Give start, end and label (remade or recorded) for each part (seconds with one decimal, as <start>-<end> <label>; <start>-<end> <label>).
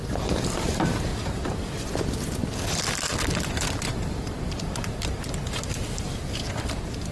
0.0-7.1 recorded